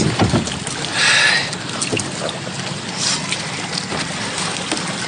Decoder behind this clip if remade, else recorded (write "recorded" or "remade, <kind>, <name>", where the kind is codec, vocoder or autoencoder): recorded